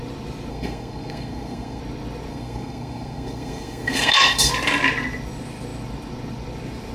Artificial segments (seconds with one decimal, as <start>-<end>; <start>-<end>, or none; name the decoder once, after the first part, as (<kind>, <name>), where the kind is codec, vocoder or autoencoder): 0.5-1.8 (codec, SNAC); 2.3-4.5